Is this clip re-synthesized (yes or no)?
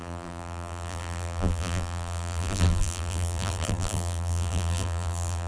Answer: yes